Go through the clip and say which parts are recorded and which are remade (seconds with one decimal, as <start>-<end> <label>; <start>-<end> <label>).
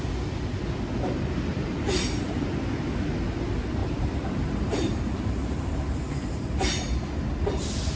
0.0-3.8 recorded; 3.8-5.8 remade; 5.8-8.0 recorded